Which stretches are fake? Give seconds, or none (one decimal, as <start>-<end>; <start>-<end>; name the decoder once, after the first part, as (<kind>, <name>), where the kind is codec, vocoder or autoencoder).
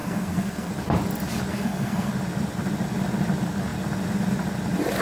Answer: 0.0-0.7 (codec, SNAC); 1.5-2.1